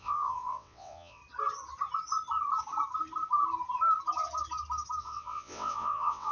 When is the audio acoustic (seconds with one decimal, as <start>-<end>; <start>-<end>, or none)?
1.2-5.0